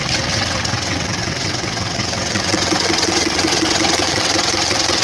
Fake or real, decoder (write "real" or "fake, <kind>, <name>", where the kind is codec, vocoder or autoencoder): fake, vocoder, WaveNeXt